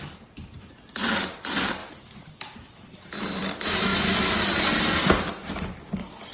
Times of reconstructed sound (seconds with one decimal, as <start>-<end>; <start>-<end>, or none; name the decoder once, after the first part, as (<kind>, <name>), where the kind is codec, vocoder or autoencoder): 1.8-3.0 (vocoder, BigVGAN v2)